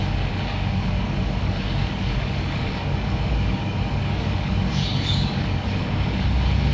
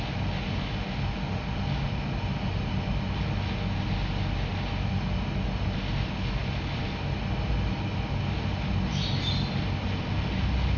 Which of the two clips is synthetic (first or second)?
first